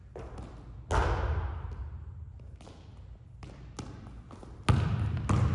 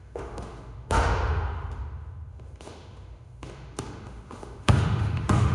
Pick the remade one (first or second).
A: second